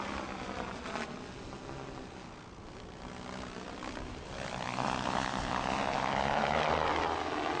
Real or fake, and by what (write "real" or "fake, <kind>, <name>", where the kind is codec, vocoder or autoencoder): real